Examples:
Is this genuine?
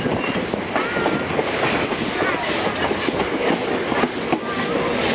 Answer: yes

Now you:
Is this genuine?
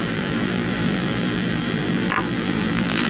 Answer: no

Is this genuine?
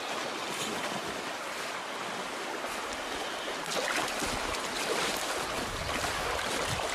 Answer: yes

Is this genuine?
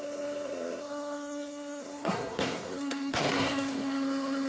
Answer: no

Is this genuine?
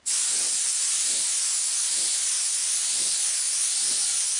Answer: yes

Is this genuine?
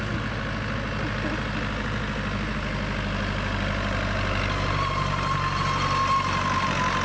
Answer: yes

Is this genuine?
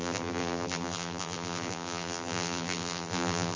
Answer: no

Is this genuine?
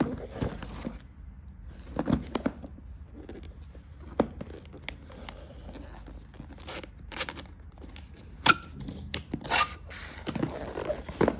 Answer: yes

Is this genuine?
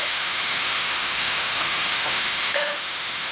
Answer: no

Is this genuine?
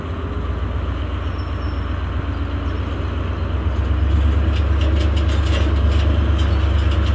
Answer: yes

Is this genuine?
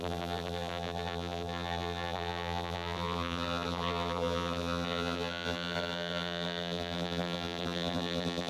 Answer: no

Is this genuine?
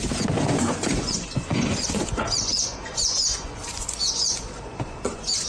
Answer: no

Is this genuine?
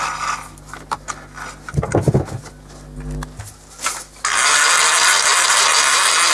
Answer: yes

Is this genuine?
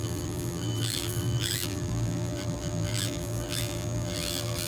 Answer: no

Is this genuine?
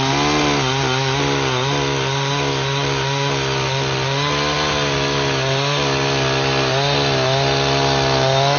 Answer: yes